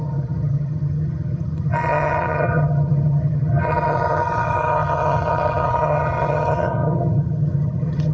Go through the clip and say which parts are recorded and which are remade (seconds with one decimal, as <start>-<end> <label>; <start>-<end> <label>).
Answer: 0.0-8.1 remade